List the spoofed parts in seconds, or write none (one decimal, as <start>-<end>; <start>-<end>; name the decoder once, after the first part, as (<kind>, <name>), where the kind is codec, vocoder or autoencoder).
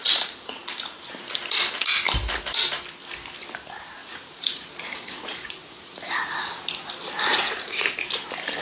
0.0-0.6 (vocoder, Vocos); 4.0-6.5; 7.3-7.9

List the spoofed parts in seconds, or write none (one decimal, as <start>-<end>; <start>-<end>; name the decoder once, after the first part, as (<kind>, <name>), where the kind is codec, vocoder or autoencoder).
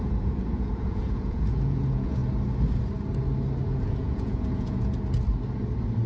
0.0-2.2 (vocoder, Vocos); 3.7-4.9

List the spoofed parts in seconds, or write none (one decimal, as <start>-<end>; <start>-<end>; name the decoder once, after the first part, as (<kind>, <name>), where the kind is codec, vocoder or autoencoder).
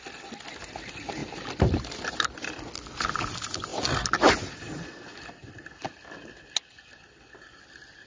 none